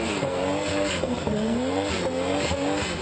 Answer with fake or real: fake